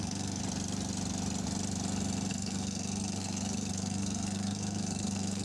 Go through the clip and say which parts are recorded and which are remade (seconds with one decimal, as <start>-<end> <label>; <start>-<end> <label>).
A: 0.0-0.4 remade; 0.4-2.3 recorded; 2.3-5.4 remade